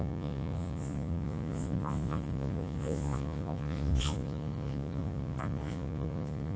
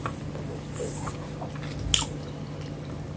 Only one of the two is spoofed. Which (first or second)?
first